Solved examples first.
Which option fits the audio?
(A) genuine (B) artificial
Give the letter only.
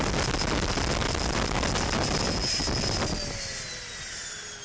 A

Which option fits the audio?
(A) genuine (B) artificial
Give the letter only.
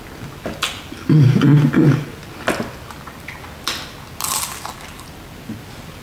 A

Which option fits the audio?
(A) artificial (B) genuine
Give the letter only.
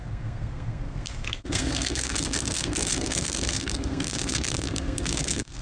A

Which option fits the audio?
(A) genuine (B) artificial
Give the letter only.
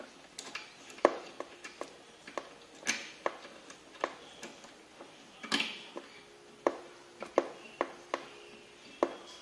A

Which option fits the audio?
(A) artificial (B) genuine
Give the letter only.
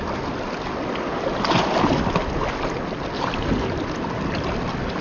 B